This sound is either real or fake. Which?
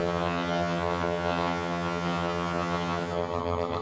fake